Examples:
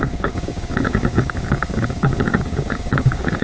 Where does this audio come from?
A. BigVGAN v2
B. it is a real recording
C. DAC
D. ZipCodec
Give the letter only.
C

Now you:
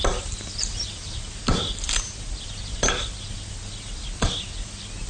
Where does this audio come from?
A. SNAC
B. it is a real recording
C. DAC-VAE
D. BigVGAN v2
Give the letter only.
B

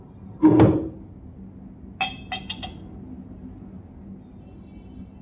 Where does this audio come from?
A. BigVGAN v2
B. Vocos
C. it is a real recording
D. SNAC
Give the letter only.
C